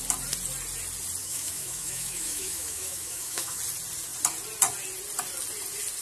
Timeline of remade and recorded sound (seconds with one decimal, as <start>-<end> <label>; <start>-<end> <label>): 0.0-1.2 recorded; 1.2-3.6 remade; 3.6-6.0 recorded